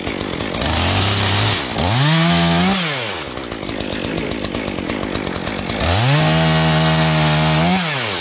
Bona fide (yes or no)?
yes